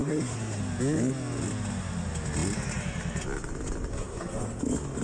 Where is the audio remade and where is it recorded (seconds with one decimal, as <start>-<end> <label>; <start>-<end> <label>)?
0.0-0.6 remade; 0.6-3.9 recorded; 3.9-4.6 remade; 4.6-5.0 recorded